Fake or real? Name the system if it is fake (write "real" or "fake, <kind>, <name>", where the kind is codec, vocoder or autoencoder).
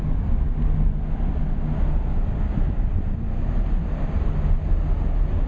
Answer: real